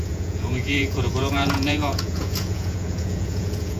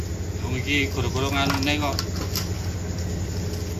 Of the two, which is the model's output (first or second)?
first